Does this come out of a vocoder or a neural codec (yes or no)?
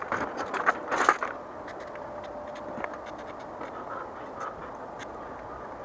no